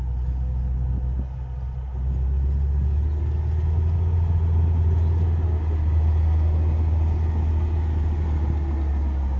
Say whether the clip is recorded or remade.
recorded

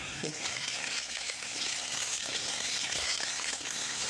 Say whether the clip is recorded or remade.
remade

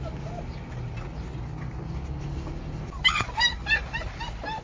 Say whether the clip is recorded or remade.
recorded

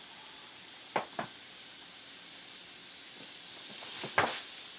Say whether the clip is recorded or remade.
recorded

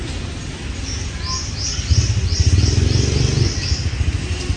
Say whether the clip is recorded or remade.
recorded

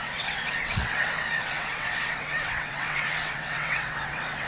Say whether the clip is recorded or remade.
remade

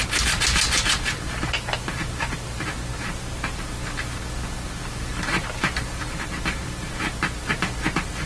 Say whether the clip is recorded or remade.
recorded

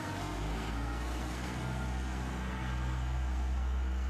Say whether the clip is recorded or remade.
remade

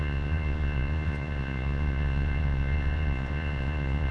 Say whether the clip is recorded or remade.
remade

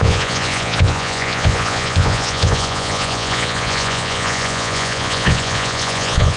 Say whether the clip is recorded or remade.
remade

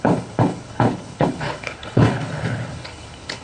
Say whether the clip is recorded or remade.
remade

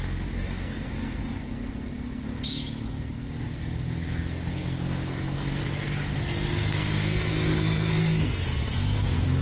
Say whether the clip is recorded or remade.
remade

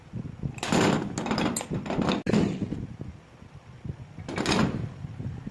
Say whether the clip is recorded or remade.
recorded